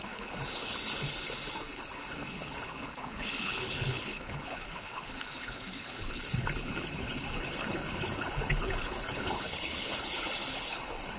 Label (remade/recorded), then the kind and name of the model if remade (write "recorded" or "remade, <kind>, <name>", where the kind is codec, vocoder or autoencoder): remade, codec, HILCodec